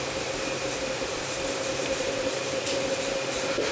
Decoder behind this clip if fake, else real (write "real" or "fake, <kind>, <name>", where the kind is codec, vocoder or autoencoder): real